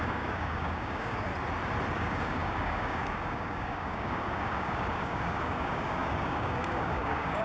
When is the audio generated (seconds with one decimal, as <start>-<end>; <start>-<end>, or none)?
0.0-1.3; 1.9-7.4